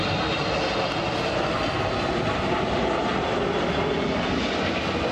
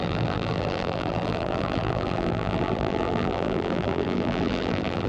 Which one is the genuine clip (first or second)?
first